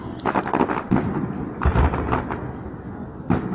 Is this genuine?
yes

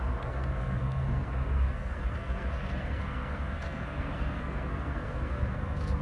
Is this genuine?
no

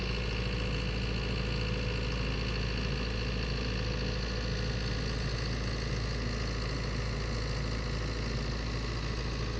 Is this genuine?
yes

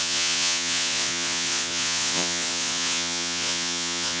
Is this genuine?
no